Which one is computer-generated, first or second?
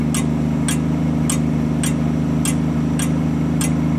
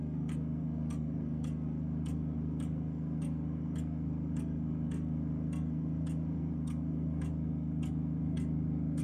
second